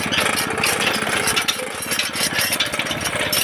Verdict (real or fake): real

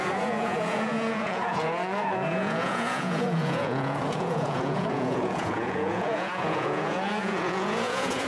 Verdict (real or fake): fake